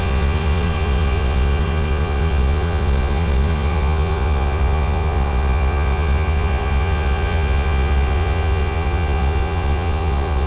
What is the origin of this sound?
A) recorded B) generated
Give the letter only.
B